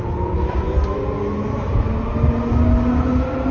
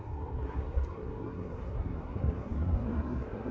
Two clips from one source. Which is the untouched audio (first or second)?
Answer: first